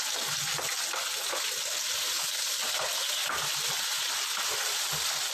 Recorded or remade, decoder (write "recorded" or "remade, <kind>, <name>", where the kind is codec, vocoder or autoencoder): recorded